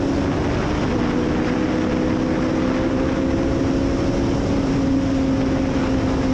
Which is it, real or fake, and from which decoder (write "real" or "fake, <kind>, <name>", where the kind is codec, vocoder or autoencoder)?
real